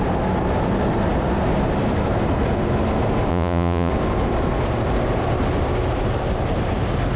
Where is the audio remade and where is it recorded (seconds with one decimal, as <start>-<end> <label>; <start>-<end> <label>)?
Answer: 0.0-3.3 recorded; 3.3-3.9 remade; 3.9-7.2 recorded